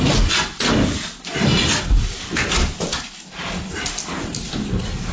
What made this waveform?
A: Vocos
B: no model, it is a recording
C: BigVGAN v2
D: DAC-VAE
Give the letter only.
B